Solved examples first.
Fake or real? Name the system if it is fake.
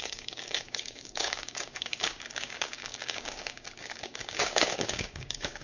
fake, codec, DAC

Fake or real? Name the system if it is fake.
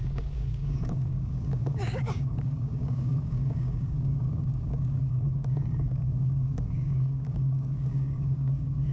fake, codec, DAC